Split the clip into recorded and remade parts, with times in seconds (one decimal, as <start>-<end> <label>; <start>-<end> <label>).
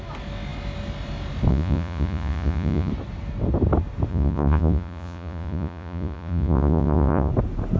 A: 0.0-1.5 recorded; 1.5-2.9 remade; 2.9-4.1 recorded; 4.1-7.3 remade; 7.3-7.8 recorded